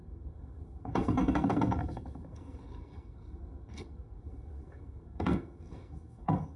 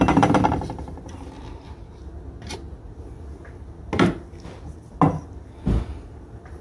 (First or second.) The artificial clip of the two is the first